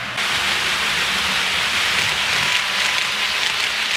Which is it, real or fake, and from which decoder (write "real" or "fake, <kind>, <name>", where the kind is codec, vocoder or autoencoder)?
real